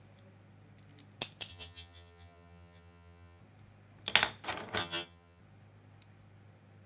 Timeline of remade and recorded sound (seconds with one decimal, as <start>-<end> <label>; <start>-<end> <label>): 0.0-1.5 recorded; 1.5-3.4 remade; 3.4-4.8 recorded; 4.8-5.4 remade; 5.4-6.9 recorded